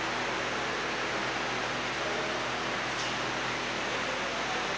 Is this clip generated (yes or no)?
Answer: no